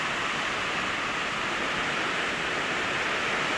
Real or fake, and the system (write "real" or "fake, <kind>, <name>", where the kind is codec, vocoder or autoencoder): real